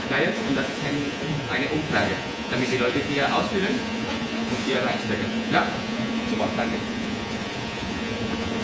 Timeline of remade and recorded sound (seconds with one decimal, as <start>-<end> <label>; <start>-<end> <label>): 0.0-8.6 remade

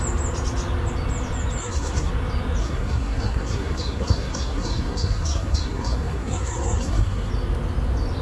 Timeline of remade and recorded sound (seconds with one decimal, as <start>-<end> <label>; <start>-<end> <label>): 0.0-1.6 recorded; 1.6-2.1 remade; 2.1-2.6 recorded; 2.6-7.3 remade; 7.3-8.2 recorded

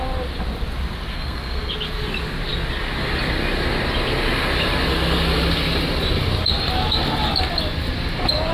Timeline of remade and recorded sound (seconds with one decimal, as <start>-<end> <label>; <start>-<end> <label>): 0.0-1.1 recorded; 1.1-1.7 remade; 1.7-8.5 recorded